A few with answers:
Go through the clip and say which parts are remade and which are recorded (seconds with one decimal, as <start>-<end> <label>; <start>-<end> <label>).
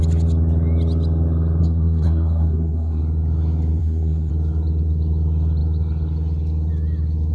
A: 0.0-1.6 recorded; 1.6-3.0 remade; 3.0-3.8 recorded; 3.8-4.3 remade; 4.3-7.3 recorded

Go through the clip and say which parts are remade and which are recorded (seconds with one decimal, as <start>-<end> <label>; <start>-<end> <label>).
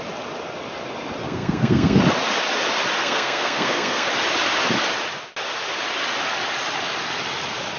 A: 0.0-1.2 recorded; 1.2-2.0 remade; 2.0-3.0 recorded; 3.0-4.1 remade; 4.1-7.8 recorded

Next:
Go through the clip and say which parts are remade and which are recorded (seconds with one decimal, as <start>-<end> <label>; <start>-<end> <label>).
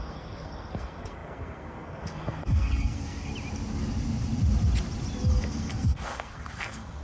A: 0.0-3.3 remade; 3.3-5.4 recorded; 5.4-7.0 remade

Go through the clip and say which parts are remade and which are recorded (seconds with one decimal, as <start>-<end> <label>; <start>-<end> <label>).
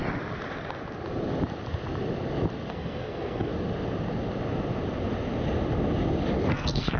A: 0.0-2.7 recorded; 2.7-3.5 remade; 3.5-6.5 recorded; 6.5-7.0 remade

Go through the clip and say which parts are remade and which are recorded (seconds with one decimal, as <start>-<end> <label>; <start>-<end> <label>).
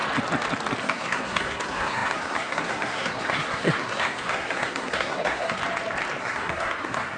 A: 0.0-0.8 recorded; 0.8-5.6 remade; 5.6-6.2 recorded; 6.2-7.2 remade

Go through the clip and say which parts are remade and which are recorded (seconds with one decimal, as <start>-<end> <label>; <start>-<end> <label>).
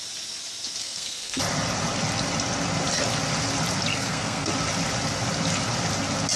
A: 0.0-0.8 recorded; 0.8-1.4 remade; 1.4-3.9 recorded; 3.9-4.5 remade; 4.5-6.4 recorded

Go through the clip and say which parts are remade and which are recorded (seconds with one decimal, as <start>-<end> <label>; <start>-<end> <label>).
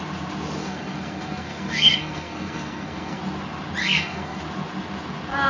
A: 0.0-0.6 recorded; 0.6-3.2 remade; 3.2-3.8 recorded; 3.8-4.4 remade; 4.4-5.5 recorded